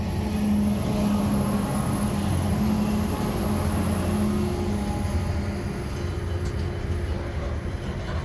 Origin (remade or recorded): recorded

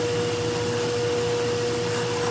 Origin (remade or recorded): recorded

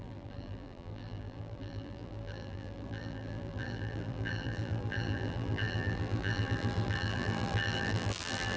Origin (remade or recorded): remade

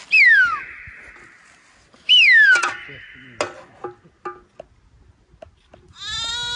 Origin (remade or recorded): recorded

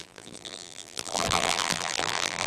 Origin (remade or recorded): remade